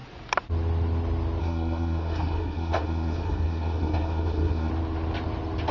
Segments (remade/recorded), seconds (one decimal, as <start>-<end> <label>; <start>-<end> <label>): 0.0-1.4 recorded; 1.4-4.7 remade; 4.7-5.7 recorded